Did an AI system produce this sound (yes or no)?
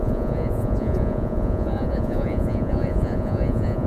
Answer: yes